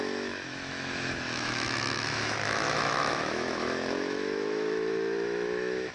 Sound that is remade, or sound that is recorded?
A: remade